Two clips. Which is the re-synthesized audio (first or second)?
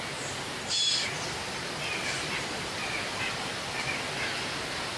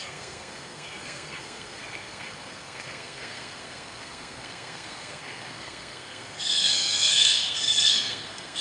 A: second